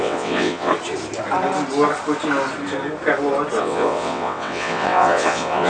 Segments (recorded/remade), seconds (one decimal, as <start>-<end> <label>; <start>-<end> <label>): 0.0-0.7 remade; 0.7-3.6 recorded; 3.6-5.7 remade